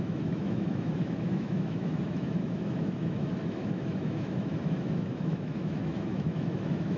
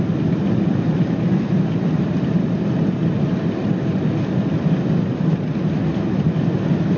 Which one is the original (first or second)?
second